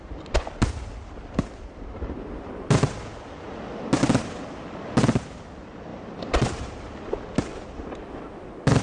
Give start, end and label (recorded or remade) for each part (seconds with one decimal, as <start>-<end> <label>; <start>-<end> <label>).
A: 0.0-5.9 recorded; 5.9-6.7 remade; 6.7-8.8 recorded